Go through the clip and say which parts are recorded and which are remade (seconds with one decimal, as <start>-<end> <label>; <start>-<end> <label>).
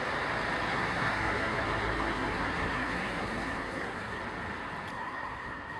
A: 0.0-0.7 recorded; 0.7-4.2 remade; 4.2-4.9 recorded; 4.9-5.8 remade